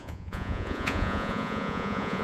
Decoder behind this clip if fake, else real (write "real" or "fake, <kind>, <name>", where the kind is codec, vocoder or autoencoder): fake, vocoder, Vocos